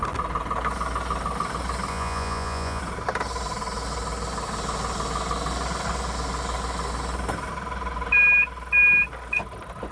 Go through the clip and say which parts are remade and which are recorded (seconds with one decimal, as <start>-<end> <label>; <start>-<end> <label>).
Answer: 0.0-1.9 recorded; 1.9-2.8 remade; 2.8-9.9 recorded